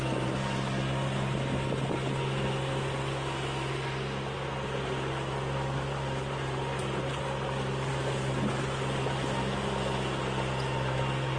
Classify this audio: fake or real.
real